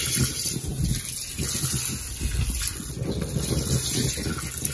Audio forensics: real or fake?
real